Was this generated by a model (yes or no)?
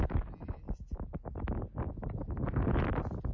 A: no